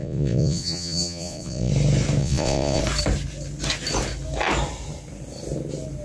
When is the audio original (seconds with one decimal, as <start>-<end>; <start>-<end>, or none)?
1.7-2.2; 2.8-6.0